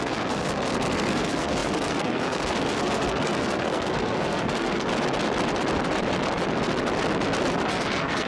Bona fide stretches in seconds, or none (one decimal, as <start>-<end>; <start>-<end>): 4.9-7.7